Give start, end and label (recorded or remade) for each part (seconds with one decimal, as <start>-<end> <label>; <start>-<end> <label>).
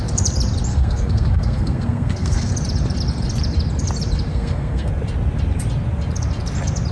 0.0-0.7 recorded; 0.7-2.5 remade; 2.5-4.3 recorded; 4.3-4.9 remade; 4.9-6.9 recorded